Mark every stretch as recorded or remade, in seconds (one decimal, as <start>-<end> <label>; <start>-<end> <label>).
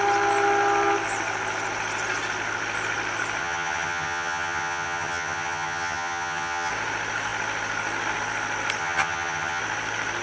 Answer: 0.0-3.4 recorded; 3.4-6.7 remade; 6.7-8.8 recorded; 8.8-9.6 remade; 9.6-10.2 recorded